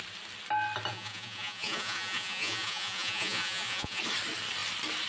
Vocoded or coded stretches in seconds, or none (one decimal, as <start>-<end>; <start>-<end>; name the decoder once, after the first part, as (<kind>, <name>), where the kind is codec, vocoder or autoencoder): 0.9-4.0 (vocoder, Vocos)